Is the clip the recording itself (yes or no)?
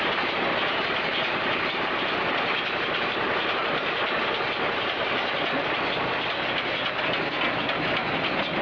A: yes